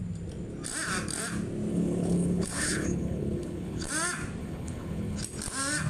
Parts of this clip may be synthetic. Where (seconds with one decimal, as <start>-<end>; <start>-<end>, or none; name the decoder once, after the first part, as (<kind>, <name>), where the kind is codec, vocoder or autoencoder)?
1.7-3.9 (codec, HILCodec); 4.4-5.2